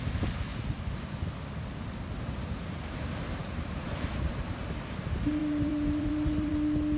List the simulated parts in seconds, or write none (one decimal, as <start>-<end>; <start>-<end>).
3.4-4.5; 5.4-6.5